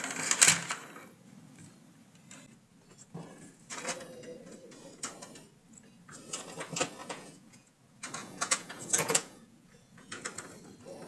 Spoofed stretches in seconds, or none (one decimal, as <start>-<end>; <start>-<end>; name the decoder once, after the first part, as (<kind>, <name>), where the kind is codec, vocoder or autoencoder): 7.0-7.7 (vocoder, Vocos); 8.2-10.2